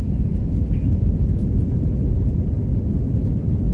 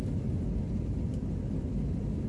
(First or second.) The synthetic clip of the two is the first